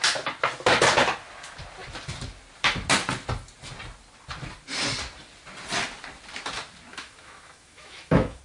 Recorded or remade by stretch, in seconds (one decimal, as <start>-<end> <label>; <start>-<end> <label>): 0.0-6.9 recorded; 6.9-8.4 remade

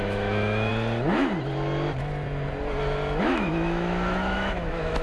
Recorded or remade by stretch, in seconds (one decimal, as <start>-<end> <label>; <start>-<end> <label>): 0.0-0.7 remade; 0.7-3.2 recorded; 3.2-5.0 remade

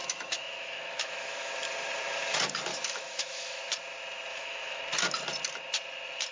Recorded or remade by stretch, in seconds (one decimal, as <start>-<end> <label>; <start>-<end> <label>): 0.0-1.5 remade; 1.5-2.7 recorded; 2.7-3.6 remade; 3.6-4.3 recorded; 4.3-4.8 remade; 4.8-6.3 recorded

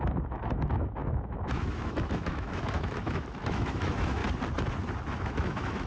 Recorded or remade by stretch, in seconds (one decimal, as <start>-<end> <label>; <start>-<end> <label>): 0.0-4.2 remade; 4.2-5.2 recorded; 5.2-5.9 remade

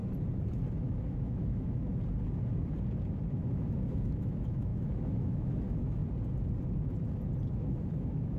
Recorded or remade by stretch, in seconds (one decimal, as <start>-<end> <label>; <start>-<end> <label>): 0.0-0.8 recorded; 0.8-1.9 remade; 1.9-3.3 recorded; 3.3-6.0 remade; 6.0-7.5 recorded; 7.5-8.4 remade

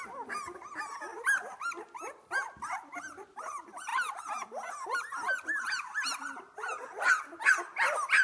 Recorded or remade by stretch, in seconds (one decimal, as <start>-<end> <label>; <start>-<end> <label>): 0.0-8.2 recorded

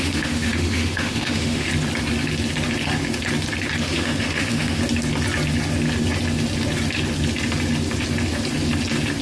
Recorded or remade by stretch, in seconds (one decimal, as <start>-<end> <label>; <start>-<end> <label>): 0.0-1.7 remade; 1.7-3.8 recorded; 3.8-4.8 remade; 4.8-9.2 recorded